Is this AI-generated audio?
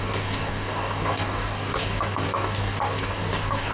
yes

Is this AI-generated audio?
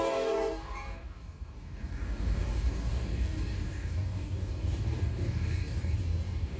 yes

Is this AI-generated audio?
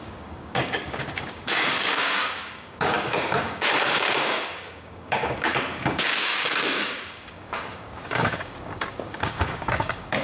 yes